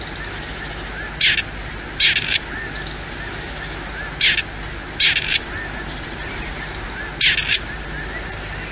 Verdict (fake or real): real